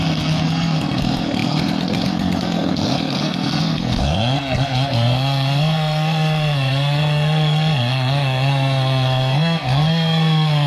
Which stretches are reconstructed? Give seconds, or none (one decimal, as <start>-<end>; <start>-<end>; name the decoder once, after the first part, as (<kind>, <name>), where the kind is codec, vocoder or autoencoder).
0.0-10.7 (codec, SNAC)